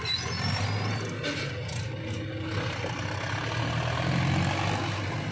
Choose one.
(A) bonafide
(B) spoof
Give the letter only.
A